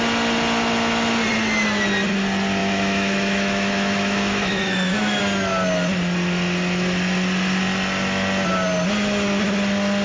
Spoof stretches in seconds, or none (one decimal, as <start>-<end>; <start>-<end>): 2.6-5.2